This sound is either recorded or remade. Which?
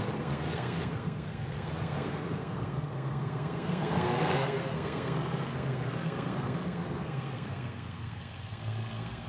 remade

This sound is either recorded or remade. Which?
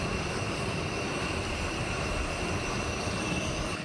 recorded